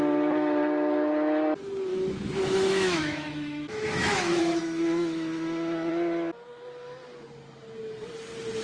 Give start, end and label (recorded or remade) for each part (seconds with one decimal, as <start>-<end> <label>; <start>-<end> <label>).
0.0-1.9 recorded; 1.9-5.9 remade; 5.9-8.6 recorded